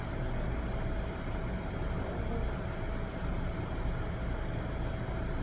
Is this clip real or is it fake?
real